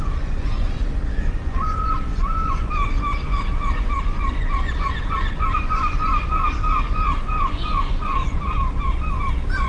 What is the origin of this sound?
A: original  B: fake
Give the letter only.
B